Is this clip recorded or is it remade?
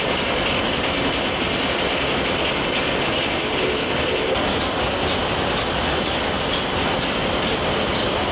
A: recorded